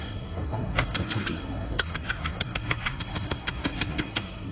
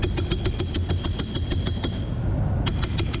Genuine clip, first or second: second